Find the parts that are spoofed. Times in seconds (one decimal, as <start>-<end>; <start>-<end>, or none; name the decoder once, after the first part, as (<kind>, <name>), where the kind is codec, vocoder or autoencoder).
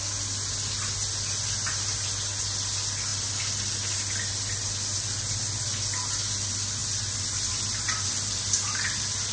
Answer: none